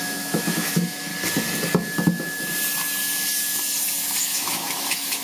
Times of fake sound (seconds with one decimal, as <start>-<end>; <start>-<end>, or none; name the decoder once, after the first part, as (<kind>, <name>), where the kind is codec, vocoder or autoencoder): 0.0-1.1 (autoencoder, DAC-VAE); 4.2-5.2